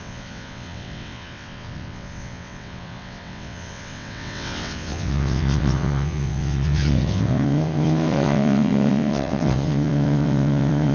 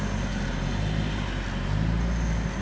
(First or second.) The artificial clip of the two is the first